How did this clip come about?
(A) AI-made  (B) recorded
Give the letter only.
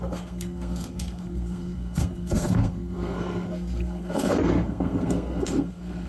A